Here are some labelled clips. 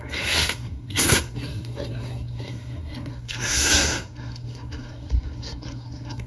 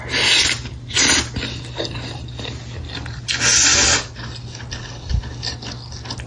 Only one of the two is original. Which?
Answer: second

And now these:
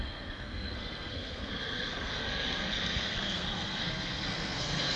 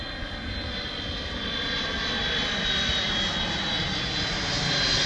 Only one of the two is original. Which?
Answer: second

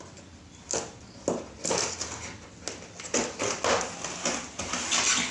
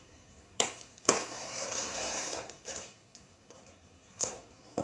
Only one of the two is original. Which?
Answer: first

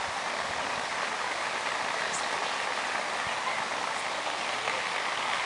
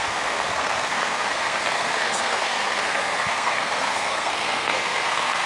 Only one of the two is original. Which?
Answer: first